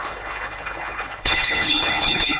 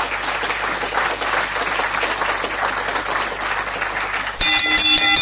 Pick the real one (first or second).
second